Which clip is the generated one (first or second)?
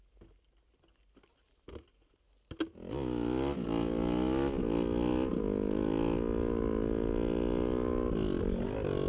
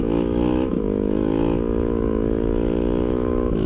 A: second